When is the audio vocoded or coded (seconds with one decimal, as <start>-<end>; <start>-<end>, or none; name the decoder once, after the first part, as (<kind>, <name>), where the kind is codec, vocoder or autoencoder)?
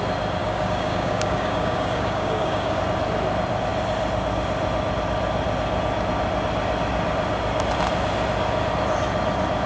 0.4-2.8 (codec, DAC)